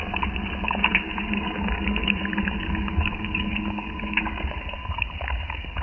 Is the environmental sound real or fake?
fake